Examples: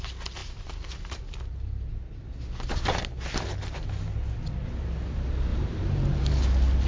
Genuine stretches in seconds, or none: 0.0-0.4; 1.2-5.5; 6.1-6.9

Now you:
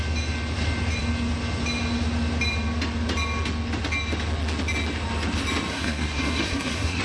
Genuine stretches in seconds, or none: 0.0-5.7

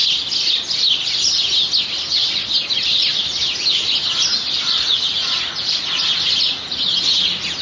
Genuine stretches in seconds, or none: 0.0-4.6

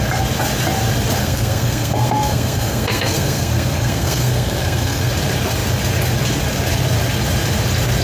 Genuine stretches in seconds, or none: 0.0-1.2; 5.1-8.0

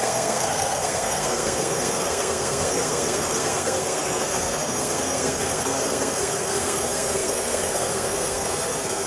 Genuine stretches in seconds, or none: none

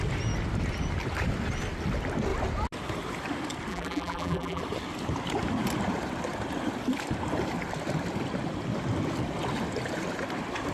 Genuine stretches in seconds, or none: 0.0-3.7; 4.6-10.7